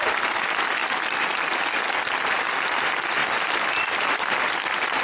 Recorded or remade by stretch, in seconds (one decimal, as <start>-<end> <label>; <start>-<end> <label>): 0.0-5.0 recorded